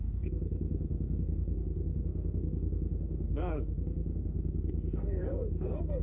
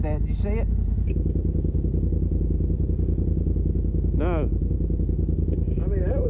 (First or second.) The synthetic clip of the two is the first